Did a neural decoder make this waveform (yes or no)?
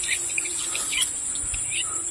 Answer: yes